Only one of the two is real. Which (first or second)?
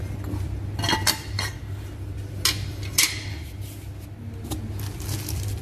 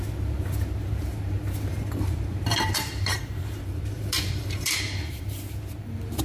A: first